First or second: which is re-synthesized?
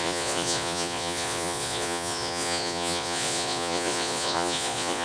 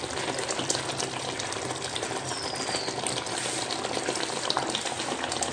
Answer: first